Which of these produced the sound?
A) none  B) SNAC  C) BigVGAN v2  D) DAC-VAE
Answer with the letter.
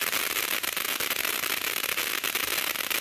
C